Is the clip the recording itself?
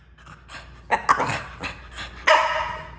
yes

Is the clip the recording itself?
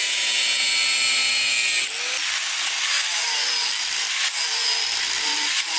yes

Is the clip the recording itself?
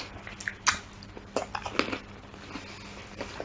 yes